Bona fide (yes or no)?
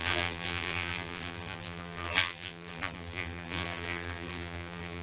no